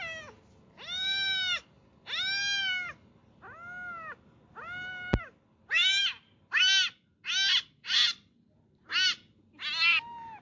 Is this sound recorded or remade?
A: recorded